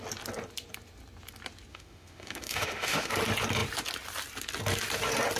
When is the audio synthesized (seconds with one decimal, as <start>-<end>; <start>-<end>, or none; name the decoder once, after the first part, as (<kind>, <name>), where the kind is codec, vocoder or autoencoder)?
1.7-3.1 (autoencoder, DAC-VAE)